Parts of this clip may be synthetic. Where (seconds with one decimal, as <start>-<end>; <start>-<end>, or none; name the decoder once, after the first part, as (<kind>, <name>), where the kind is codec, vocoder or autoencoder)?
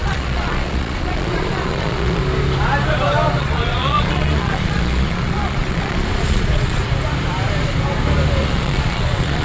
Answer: 0.0-2.2 (vocoder, Vocos); 3.4-6.8; 8.4-9.4